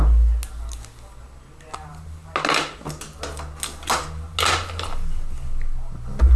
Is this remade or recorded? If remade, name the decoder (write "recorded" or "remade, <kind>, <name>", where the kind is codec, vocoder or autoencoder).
recorded